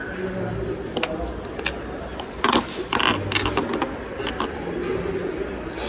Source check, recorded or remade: recorded